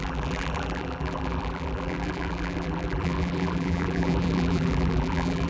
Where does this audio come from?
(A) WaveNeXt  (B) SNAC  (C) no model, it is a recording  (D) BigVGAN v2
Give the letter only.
D